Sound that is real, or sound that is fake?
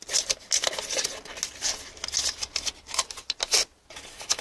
real